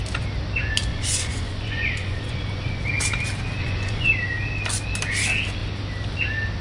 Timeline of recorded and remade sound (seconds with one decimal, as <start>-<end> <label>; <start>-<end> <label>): 0.0-0.9 recorded; 0.9-2.8 remade; 2.8-3.6 recorded; 3.6-4.1 remade; 4.1-6.6 recorded